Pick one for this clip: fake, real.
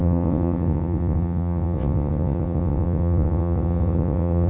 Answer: fake